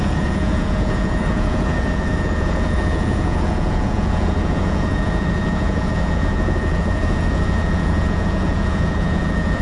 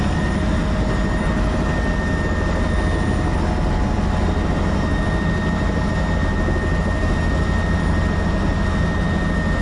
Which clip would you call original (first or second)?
second